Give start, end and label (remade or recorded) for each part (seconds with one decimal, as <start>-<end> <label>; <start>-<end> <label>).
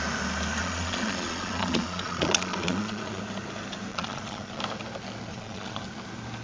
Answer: 0.0-0.6 recorded; 0.6-3.2 remade; 3.2-3.9 recorded; 3.9-4.6 remade; 4.6-5.3 recorded; 5.3-5.8 remade; 5.8-6.4 recorded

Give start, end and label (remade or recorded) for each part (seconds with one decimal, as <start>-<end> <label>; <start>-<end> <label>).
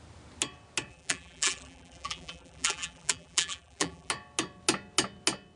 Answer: 0.0-0.9 recorded; 0.9-4.1 remade; 4.1-5.6 recorded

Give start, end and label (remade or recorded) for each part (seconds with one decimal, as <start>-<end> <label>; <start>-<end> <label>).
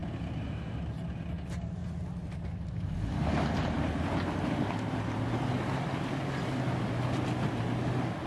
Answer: 0.0-1.0 remade; 1.0-8.3 recorded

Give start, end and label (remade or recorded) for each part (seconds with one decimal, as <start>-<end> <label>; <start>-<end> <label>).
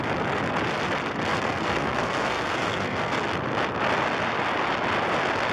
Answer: 0.0-1.3 recorded; 1.3-3.1 remade; 3.1-5.5 recorded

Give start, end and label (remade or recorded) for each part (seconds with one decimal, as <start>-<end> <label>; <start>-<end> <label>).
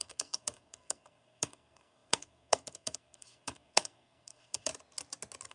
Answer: 0.0-4.7 remade; 4.7-5.5 recorded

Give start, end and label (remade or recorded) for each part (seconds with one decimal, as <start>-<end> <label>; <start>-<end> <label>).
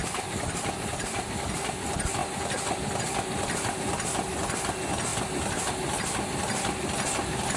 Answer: 0.0-2.2 recorded; 2.2-3.0 remade; 3.0-5.1 recorded; 5.1-5.7 remade; 5.7-7.6 recorded